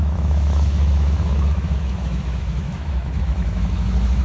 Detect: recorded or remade remade